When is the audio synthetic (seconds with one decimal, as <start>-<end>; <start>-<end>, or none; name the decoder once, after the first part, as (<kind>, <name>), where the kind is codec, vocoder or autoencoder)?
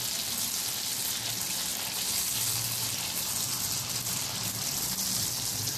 none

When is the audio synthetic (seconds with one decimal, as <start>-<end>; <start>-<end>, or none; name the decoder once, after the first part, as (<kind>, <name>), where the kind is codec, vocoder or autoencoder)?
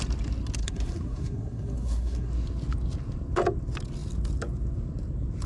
0.6-2.3 (codec, SNAC)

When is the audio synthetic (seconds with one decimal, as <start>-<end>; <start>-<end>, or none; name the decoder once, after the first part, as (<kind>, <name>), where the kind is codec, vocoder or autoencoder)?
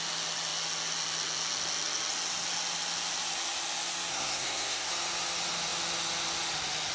4.1-4.9 (codec, SNAC)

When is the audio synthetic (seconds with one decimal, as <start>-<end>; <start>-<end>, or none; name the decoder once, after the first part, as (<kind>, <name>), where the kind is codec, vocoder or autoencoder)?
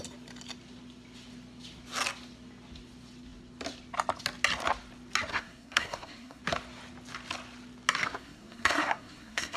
5.3-6.4 (codec, SNAC); 8.0-9.6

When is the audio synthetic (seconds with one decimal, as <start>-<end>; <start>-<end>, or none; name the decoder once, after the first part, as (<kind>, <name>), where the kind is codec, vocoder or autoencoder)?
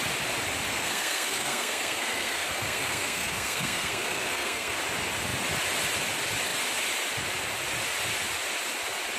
0.7-4.8 (codec, SNAC)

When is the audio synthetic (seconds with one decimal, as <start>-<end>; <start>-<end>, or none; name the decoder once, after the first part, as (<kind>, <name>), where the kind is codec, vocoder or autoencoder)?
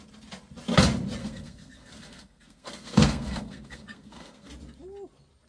1.2-4.5 (codec, SNAC)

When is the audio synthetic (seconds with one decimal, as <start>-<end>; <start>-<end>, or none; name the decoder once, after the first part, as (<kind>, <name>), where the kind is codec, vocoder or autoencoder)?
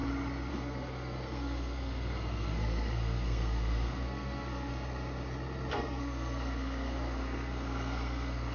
0.5-4.7 (codec, SNAC); 5.7-8.5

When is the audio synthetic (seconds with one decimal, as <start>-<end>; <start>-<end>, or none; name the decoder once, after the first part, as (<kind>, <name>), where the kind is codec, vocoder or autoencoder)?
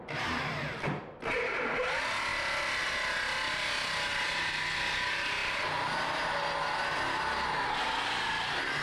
none